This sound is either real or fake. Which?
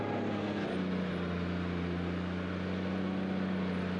real